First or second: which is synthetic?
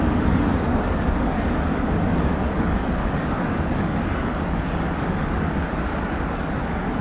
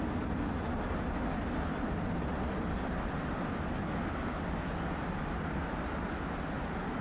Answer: first